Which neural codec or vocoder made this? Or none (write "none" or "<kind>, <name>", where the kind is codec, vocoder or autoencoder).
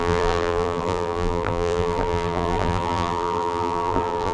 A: vocoder, BigVGAN v2